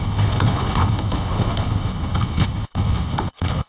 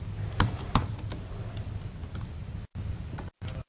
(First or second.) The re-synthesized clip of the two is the first